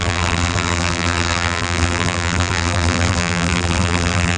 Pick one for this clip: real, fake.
fake